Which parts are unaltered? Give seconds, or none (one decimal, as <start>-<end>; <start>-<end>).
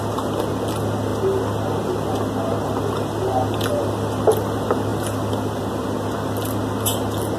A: 0.0-4.9; 5.5-7.4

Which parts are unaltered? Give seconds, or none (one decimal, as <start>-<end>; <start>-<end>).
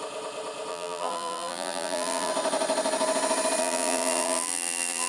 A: 0.0-0.7; 2.3-3.6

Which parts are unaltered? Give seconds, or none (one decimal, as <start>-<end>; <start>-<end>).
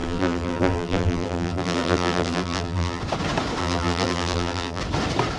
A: 3.0-3.6; 4.8-5.4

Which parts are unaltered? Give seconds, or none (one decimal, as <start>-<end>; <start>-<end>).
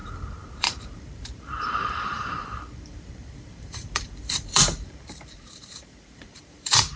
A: none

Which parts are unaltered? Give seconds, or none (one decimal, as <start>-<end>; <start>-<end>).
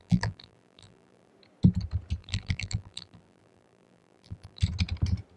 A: 1.3-2.2; 4.6-5.4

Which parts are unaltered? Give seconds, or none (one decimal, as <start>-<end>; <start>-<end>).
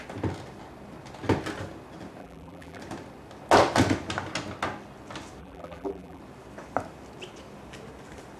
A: 0.0-2.2; 2.8-5.4; 6.2-8.4